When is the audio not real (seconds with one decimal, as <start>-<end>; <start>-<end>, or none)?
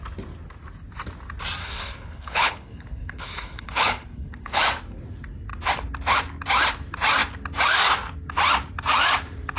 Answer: 1.6-4.6